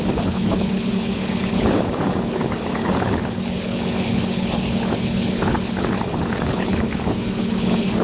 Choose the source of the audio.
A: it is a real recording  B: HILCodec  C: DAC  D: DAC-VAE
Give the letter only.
B